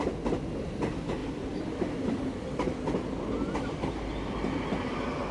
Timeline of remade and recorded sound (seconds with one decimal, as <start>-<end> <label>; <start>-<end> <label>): 0.0-5.3 recorded